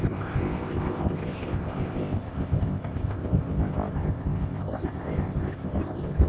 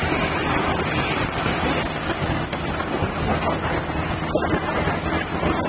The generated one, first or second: first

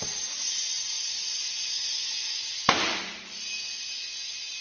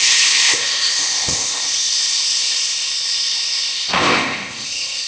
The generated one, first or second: second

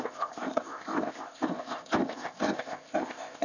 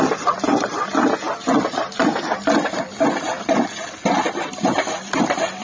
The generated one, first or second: first